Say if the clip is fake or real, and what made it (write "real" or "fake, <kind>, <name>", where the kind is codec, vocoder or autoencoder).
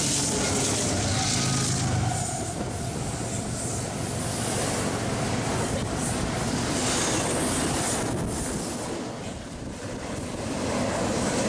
real